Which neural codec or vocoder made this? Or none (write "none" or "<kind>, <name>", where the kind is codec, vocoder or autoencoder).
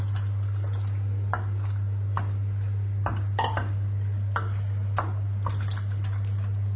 none